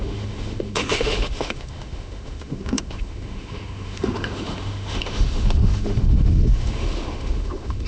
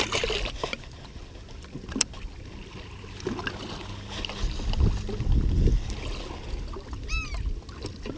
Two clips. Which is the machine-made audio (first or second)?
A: first